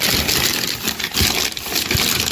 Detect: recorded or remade recorded